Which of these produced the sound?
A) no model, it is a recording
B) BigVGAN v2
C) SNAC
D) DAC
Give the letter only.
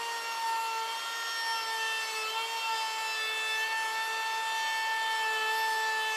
A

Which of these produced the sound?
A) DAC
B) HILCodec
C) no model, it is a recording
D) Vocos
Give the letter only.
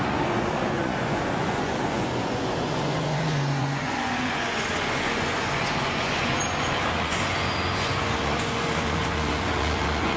D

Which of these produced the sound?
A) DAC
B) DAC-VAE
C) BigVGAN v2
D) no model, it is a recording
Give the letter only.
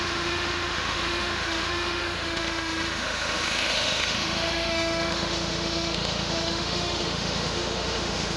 B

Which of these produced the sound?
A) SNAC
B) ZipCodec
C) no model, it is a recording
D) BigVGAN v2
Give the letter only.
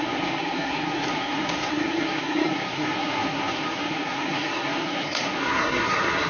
A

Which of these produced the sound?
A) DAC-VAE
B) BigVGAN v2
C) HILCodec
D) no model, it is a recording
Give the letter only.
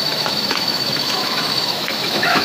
A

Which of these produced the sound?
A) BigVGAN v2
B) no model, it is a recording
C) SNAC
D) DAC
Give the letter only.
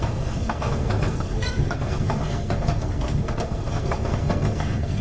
C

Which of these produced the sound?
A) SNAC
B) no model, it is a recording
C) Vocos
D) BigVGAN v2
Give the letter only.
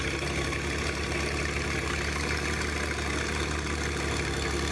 B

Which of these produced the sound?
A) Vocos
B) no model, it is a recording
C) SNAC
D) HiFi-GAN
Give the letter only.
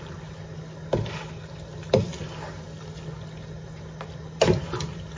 B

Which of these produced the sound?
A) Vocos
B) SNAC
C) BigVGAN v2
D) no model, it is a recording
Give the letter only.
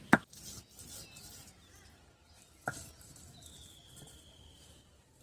D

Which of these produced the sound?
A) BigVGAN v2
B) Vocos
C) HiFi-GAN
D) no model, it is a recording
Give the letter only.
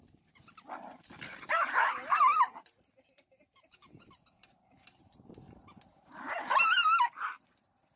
A